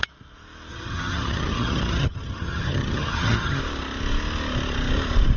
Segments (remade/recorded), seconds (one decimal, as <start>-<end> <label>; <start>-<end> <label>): 0.0-0.7 recorded; 0.7-3.6 remade; 3.6-5.4 recorded